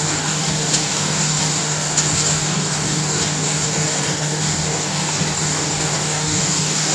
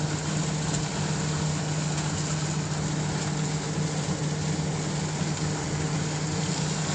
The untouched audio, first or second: second